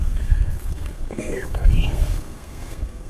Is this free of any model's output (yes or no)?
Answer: no